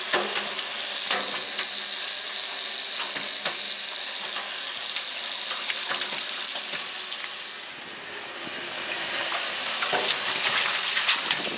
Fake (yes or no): no